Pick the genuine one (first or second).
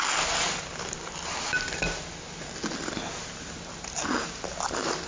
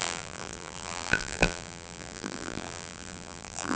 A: first